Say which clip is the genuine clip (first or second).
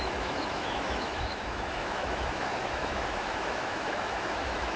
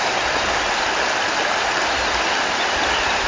second